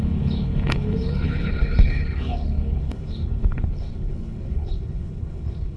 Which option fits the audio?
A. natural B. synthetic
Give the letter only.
B